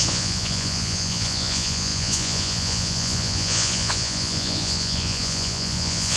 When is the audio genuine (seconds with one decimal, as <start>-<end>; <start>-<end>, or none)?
none